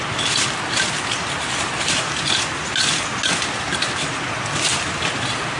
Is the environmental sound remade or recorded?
recorded